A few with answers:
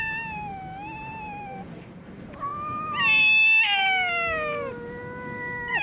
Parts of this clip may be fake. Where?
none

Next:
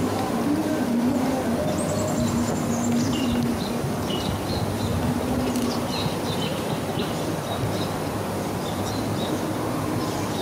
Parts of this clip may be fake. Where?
4.9-6.1 (vocoder, BigVGAN v2); 6.5-7.1